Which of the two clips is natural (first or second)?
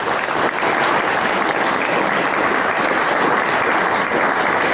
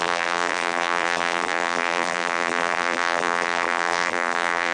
first